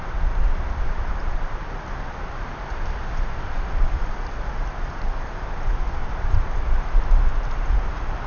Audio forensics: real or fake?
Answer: real